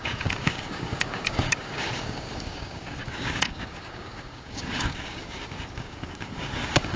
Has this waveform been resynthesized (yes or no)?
yes